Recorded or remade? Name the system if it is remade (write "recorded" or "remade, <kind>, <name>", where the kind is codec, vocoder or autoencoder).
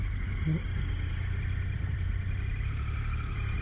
recorded